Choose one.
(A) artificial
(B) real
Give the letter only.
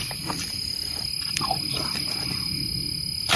B